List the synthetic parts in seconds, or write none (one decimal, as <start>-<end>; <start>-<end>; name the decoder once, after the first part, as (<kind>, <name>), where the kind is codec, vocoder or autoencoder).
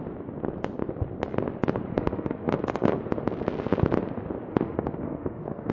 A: 1.9-2.9 (autoencoder, DAC-VAE); 4.5-5.7